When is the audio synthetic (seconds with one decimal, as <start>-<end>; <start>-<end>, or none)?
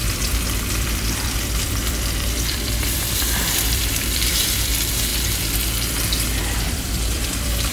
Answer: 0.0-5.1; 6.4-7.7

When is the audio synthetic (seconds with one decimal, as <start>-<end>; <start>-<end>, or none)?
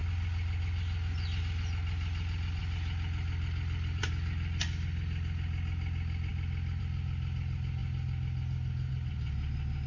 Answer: none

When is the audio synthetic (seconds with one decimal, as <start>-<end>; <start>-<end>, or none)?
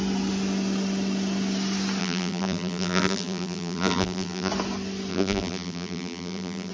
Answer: 2.0-4.5; 5.1-6.7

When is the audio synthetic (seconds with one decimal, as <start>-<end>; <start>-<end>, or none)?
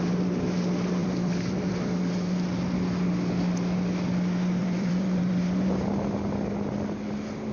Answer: 1.0-2.1; 4.6-5.3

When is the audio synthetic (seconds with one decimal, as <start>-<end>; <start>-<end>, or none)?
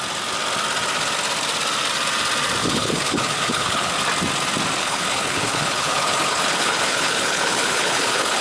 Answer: 2.6-3.9; 4.8-8.4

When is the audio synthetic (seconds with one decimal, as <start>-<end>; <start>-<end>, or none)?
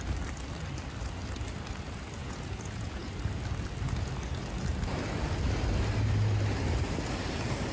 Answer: 2.2-3.1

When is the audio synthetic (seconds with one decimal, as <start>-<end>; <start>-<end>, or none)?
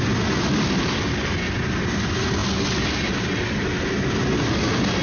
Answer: none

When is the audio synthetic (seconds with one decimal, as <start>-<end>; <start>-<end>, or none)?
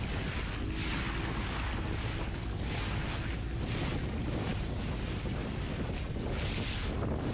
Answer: none